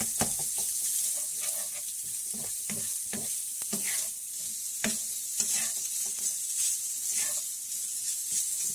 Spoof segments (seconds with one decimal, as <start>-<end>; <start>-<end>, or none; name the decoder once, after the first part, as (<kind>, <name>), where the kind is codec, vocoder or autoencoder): none